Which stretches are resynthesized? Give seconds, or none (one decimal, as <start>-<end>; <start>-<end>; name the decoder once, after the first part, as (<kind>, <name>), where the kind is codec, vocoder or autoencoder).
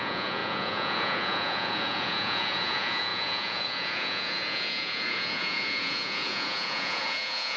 0.0-7.6 (vocoder, Vocos)